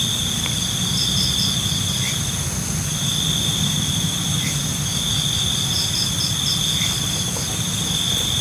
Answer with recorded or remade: recorded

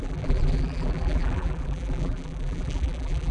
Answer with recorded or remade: remade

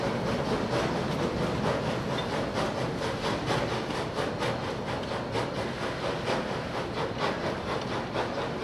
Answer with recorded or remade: recorded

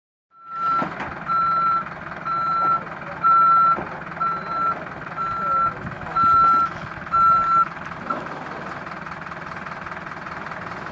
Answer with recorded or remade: recorded